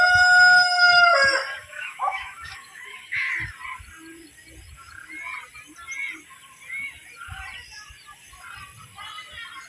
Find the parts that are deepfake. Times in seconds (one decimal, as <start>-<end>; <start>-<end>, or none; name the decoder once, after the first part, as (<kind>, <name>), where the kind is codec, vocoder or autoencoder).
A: 1.6-3.3 (autoencoder, DAC-VAE)